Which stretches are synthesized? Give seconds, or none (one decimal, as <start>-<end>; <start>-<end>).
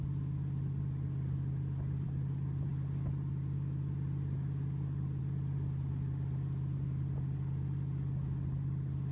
none